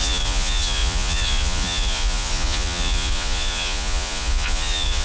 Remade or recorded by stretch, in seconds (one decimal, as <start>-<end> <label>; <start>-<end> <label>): 0.0-5.0 remade